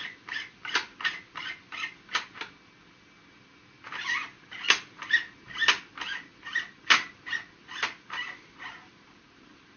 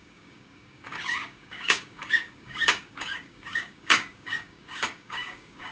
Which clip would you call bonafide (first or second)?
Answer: first